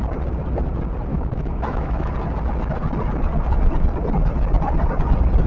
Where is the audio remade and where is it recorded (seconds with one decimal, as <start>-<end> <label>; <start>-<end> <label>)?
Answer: 0.0-1.1 recorded; 1.1-2.1 remade; 2.1-5.5 recorded